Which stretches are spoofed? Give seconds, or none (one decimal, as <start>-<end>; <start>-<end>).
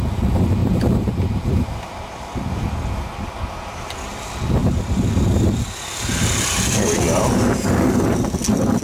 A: 0.6-1.1; 4.6-5.5